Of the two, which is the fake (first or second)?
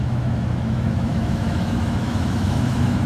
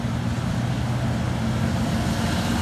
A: first